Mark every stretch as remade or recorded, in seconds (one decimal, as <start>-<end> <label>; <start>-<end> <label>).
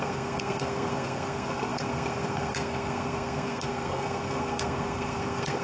0.0-5.6 remade